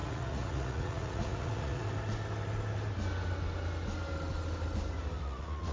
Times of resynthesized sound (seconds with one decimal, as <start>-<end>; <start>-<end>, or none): 0.0-1.8; 5.2-5.7